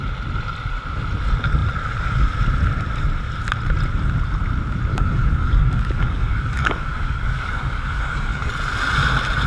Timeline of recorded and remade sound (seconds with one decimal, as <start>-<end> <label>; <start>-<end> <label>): 0.0-4.9 recorded; 4.9-8.5 remade; 8.5-9.5 recorded